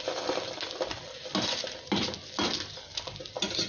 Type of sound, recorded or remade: recorded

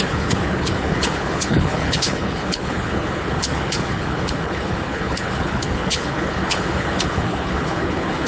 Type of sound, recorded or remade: remade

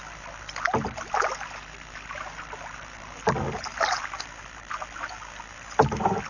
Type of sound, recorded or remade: recorded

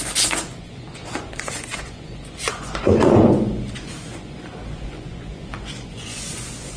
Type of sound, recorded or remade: remade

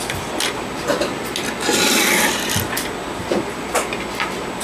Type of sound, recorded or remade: recorded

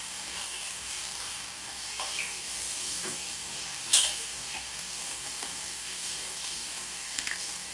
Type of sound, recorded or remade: remade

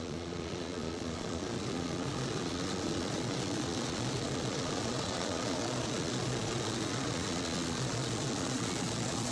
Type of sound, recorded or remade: remade